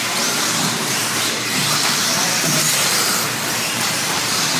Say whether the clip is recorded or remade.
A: remade